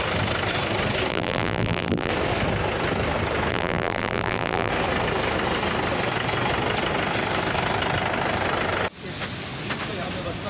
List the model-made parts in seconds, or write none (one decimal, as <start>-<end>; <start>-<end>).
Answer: 1.1-2.1; 3.5-4.7